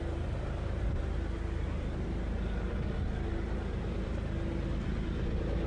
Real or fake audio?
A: real